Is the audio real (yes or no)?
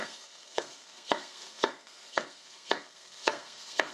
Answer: no